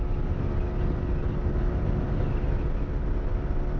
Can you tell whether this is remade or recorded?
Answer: recorded